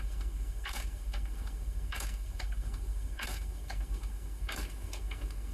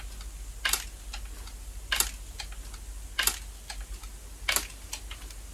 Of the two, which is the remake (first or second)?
first